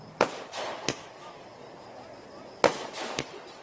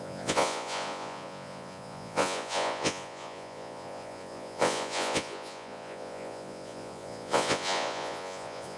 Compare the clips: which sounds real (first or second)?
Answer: first